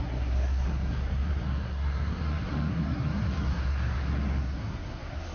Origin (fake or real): fake